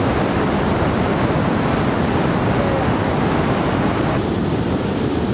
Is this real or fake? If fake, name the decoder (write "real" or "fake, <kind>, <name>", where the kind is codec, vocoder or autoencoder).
real